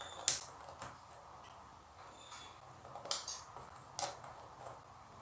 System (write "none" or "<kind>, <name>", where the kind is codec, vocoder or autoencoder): none